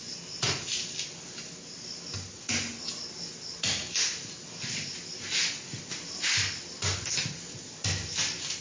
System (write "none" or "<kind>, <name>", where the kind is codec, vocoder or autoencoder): none